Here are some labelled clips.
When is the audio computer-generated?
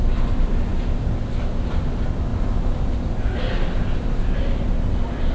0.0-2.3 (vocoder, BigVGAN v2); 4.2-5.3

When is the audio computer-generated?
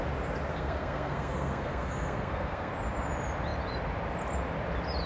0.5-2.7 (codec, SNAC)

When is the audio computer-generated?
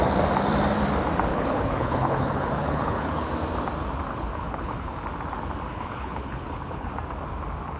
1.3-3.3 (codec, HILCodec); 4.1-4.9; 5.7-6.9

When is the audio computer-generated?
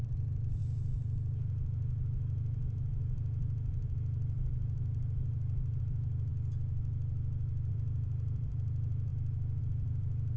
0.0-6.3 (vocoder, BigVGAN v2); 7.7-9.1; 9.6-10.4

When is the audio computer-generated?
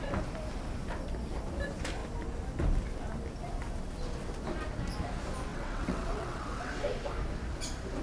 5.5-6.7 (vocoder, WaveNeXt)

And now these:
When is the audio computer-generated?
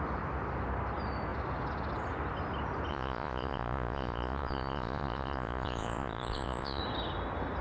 2.9-6.8 (vocoder, Vocos)